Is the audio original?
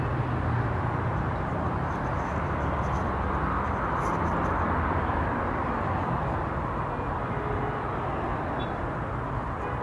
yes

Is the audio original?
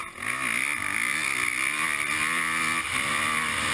yes